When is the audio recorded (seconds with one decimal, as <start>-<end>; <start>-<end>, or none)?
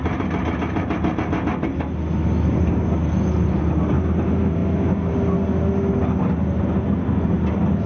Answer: 0.0-7.9